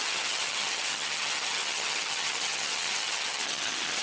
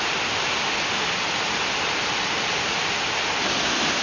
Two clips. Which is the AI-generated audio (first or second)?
first